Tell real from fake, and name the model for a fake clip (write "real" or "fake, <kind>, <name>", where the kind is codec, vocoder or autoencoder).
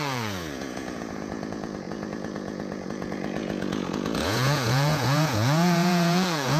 fake, vocoder, Vocos